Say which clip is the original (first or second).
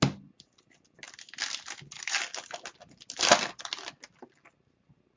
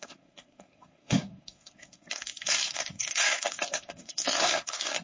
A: first